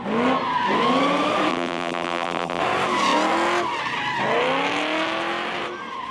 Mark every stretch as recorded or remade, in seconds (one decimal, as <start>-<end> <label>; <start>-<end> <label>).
0.0-1.5 recorded; 1.5-2.6 remade; 2.6-6.1 recorded